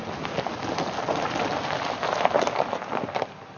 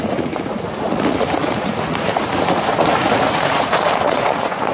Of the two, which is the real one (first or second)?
first